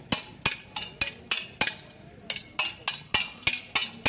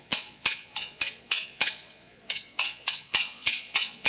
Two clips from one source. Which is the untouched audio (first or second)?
first